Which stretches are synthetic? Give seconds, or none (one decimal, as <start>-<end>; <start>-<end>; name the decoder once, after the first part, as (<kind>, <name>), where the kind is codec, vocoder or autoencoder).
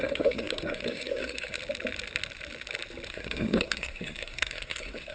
0.0-1.6 (codec, SNAC); 3.1-5.1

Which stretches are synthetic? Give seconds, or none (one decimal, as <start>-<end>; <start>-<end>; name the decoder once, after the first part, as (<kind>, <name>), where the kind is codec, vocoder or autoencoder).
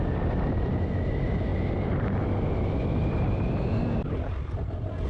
none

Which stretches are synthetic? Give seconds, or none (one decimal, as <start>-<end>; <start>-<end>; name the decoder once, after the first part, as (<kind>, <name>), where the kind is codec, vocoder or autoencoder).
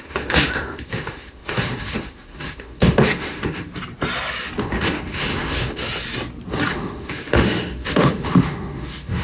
0.0-3.7 (autoencoder, DAC-VAE); 4.6-5.8; 6.7-9.2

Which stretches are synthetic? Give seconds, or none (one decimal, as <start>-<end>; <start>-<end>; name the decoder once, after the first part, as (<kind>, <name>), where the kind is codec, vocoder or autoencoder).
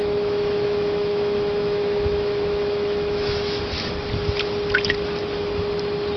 0.0-3.6 (autoencoder, DAC-VAE)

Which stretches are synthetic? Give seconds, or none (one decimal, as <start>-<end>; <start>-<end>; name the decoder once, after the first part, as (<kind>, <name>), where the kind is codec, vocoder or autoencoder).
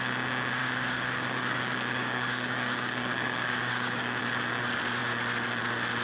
0.6-4.2 (codec, DAC)